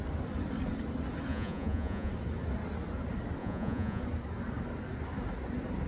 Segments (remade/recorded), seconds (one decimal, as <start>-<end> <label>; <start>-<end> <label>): 0.0-1.3 recorded; 1.3-2.1 remade; 2.1-3.4 recorded; 3.4-4.0 remade; 4.0-5.9 recorded